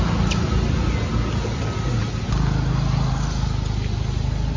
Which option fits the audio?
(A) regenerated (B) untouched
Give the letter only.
B